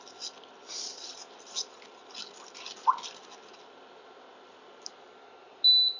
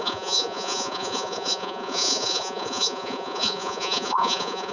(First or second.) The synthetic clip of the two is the second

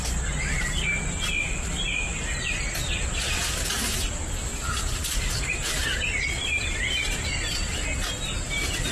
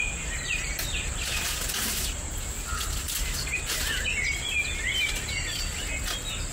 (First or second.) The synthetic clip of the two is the first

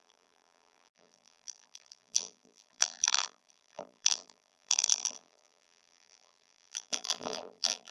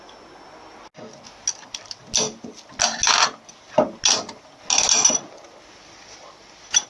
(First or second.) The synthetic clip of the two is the first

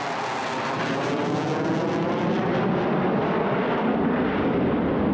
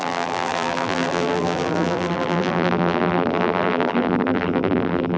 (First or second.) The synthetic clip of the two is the second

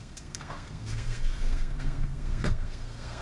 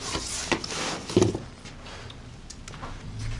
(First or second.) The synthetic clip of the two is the first